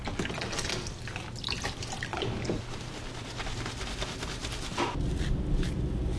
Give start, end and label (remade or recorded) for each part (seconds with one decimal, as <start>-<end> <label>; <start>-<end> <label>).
0.0-6.2 recorded